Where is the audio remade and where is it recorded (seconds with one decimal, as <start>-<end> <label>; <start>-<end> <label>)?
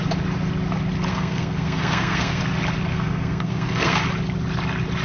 0.0-1.1 recorded; 1.1-2.4 remade; 2.4-2.9 recorded; 2.9-4.0 remade; 4.0-5.0 recorded